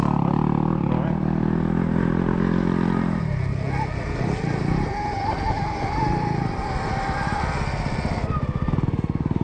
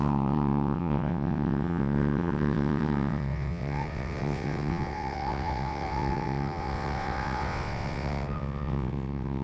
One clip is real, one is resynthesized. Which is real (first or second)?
first